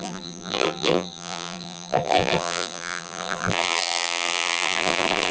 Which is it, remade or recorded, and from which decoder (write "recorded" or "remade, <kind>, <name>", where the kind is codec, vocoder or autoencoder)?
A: remade, vocoder, BigVGAN v2